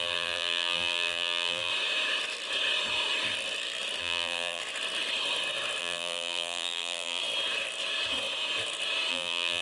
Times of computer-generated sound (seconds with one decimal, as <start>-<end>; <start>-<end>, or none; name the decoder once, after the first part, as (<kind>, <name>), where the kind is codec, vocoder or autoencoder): 0.0-1.7 (vocoder, BigVGAN v2); 4.0-4.6; 5.8-7.2; 9.1-9.6